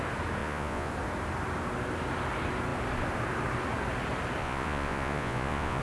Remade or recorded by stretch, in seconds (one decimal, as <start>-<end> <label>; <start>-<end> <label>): 0.0-0.4 recorded; 0.4-0.9 remade; 0.9-4.4 recorded; 4.4-5.8 remade